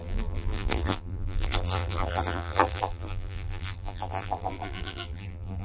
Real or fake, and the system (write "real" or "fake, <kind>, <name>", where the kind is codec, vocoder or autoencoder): fake, vocoder, BigVGAN v2